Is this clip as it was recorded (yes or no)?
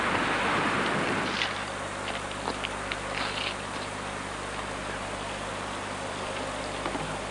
yes